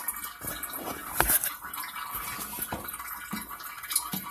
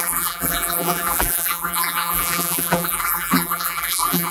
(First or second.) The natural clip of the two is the first